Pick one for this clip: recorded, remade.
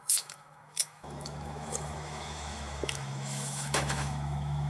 remade